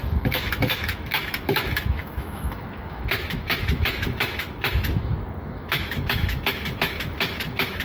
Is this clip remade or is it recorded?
remade